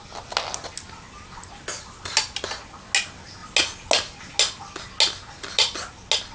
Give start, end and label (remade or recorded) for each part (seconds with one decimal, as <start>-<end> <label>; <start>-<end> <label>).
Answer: 0.0-6.3 recorded